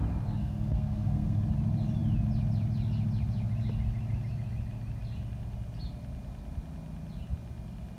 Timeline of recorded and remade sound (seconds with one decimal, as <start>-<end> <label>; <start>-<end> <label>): 0.0-0.4 recorded; 0.4-1.4 remade; 1.4-8.0 recorded